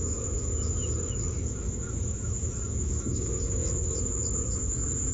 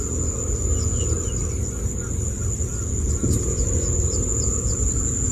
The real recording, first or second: second